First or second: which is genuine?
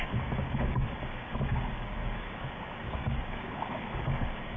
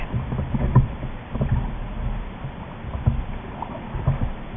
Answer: second